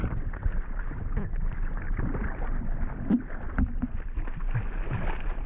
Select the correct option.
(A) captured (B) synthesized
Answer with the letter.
A